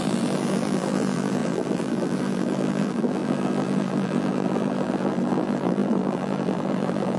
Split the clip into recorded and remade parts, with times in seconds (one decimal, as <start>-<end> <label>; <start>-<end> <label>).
0.0-7.2 remade